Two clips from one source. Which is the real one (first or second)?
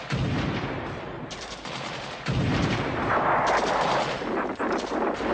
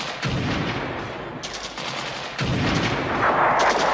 second